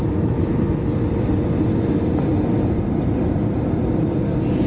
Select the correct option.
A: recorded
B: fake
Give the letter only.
A